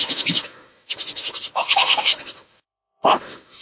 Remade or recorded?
remade